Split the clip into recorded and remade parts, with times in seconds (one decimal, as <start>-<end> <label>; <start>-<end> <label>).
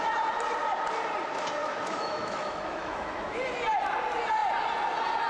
0.0-1.6 recorded; 1.6-3.4 remade; 3.4-5.3 recorded